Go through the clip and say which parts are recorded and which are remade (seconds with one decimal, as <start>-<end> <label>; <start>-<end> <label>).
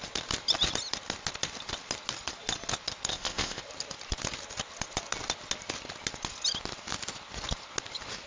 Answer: 0.0-3.1 recorded; 3.1-3.6 remade; 3.6-8.3 recorded